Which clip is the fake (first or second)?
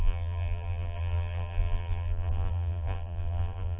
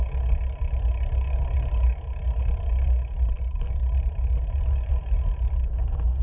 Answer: first